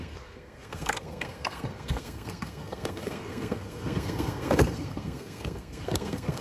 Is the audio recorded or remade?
remade